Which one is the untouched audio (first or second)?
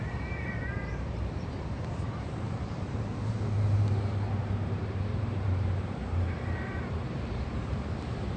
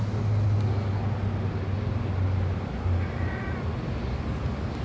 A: second